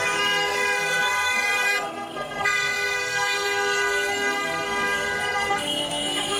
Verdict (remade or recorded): remade